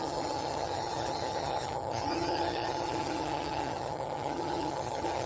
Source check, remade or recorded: remade